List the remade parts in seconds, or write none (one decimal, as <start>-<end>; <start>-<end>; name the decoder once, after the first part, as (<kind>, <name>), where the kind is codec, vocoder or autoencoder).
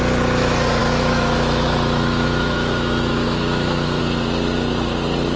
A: 0.8-4.0 (autoencoder, DAC-VAE)